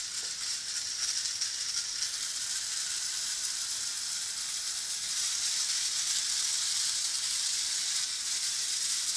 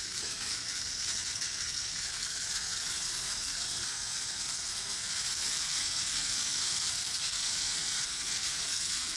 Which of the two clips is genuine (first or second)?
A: first